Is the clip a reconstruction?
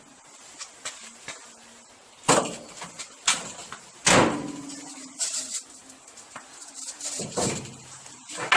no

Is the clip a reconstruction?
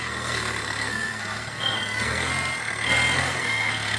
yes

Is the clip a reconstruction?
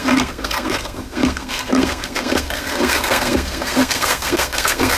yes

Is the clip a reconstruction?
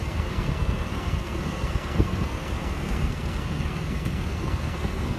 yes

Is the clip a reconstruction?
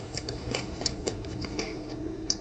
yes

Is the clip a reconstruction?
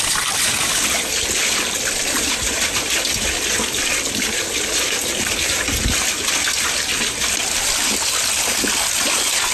no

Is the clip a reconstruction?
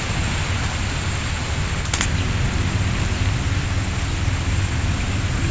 no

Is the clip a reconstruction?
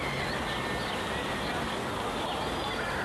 no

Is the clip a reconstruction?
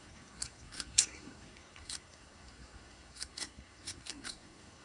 yes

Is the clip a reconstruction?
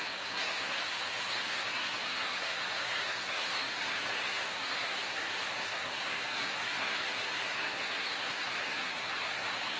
yes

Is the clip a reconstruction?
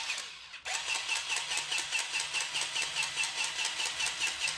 no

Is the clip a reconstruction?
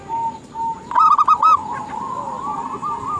no